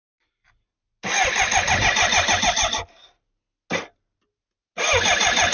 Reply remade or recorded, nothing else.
recorded